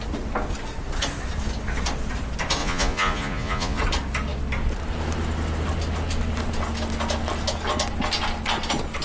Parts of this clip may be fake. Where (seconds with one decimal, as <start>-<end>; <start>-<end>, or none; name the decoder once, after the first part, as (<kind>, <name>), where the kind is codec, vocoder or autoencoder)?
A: 2.6-3.8 (vocoder, Vocos)